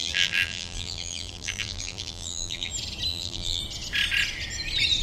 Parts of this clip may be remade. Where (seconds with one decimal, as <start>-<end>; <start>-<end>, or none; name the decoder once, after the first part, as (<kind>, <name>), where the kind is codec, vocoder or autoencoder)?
0.0-2.7 (vocoder, BigVGAN v2); 3.1-3.6